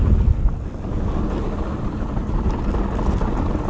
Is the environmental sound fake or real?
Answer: real